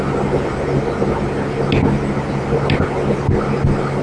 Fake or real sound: real